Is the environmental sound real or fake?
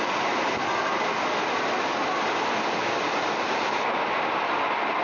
real